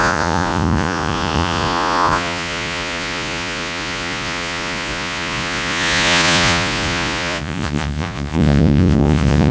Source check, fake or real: fake